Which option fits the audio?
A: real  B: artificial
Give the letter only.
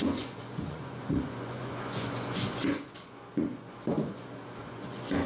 B